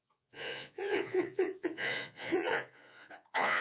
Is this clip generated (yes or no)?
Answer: yes